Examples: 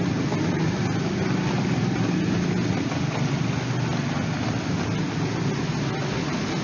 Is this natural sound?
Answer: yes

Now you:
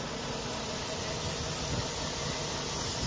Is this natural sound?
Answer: yes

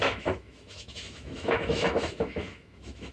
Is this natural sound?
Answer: no